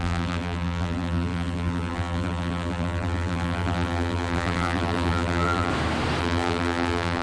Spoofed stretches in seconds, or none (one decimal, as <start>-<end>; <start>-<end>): 0.0-5.7; 6.2-7.2

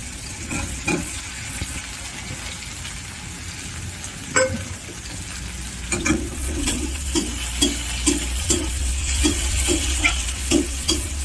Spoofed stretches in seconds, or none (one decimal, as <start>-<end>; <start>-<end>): 0.0-1.8; 6.0-7.2; 8.4-11.2

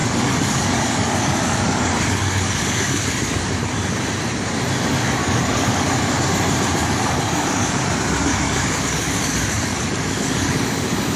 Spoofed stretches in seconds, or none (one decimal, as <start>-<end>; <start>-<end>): 0.0-3.6; 5.2-6.1; 6.8-7.9; 8.3-11.2

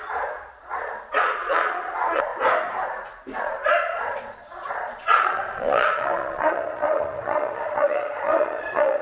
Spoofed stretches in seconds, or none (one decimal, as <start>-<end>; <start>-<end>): 0.0-2.3; 3.4-9.0